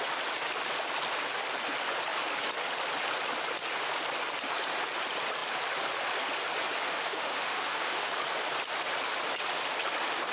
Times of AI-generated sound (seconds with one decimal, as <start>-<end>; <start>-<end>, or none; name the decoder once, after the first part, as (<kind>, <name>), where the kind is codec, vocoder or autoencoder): 6.9-8.1 (autoencoder, DAC-VAE)